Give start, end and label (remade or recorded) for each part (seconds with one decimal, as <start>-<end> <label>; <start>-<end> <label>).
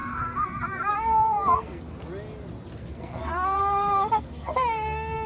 0.0-1.8 remade; 1.8-2.8 recorded; 2.8-5.3 remade